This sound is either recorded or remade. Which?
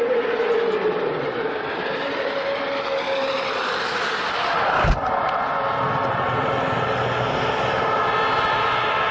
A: recorded